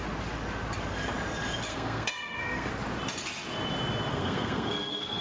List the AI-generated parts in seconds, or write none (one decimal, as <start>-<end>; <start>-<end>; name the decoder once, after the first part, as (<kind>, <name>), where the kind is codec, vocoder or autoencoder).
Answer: 1.7-2.7 (codec, SNAC); 4.1-5.2